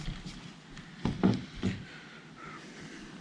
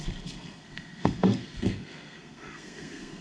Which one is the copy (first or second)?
second